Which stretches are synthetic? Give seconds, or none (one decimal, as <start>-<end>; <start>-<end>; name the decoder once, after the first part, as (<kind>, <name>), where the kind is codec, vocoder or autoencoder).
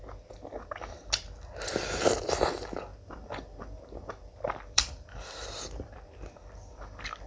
2.9-7.3 (vocoder, BigVGAN v2)